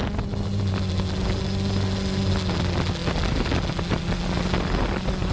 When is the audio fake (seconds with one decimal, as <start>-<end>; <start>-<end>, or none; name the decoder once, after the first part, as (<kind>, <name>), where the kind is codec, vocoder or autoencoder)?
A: none